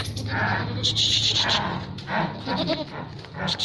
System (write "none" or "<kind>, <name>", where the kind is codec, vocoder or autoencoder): none